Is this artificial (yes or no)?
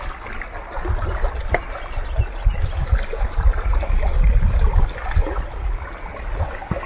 no